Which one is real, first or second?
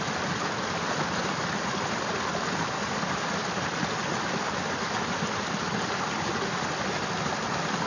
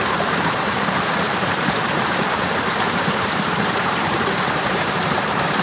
first